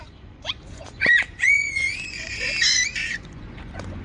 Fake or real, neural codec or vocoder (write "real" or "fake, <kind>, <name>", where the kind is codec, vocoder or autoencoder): fake, vocoder, Vocos